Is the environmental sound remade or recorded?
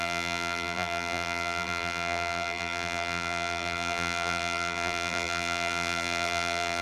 remade